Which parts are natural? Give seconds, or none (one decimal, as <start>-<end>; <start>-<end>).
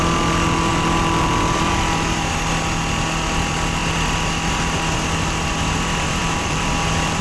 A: 0.0-0.7; 1.8-6.2